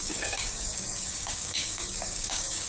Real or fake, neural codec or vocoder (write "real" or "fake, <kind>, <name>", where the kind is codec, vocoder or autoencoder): fake, codec, DAC